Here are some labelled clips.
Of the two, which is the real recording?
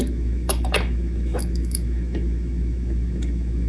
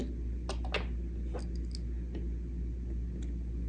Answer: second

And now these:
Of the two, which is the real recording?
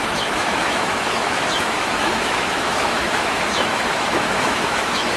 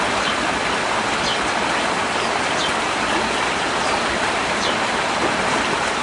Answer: second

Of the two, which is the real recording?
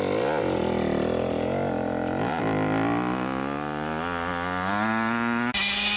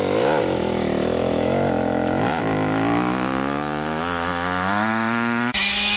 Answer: first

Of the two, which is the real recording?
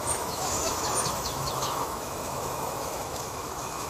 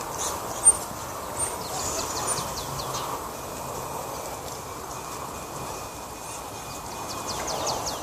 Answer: second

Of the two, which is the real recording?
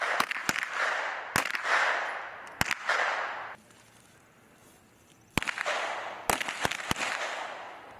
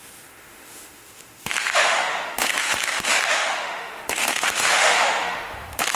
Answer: first